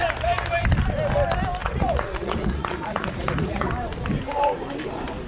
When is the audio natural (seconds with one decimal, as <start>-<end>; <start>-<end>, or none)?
0.0-1.6; 3.7-5.3